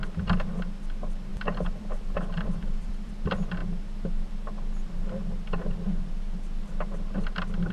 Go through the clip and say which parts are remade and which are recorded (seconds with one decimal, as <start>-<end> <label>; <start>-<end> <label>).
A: 0.0-1.3 recorded; 1.3-3.1 remade; 3.1-7.7 recorded